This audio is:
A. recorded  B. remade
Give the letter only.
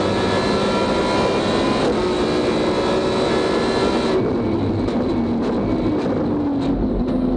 A